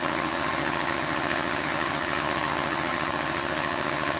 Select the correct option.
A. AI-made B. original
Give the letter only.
A